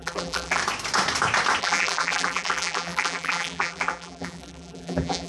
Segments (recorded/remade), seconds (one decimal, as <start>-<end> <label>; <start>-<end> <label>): 0.0-0.6 remade; 0.6-1.6 recorded; 1.6-5.3 remade